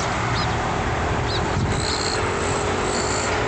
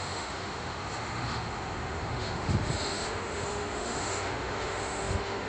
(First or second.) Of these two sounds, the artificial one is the second